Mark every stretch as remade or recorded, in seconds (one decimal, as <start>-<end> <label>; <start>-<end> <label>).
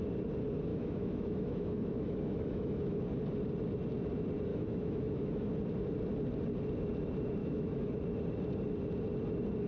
0.0-0.7 recorded; 0.7-3.0 remade; 3.0-4.5 recorded; 4.5-5.5 remade; 5.5-7.4 recorded; 7.4-7.9 remade; 7.9-9.7 recorded